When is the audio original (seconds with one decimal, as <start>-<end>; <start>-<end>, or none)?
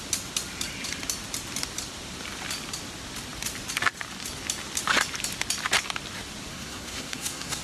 0.0-6.5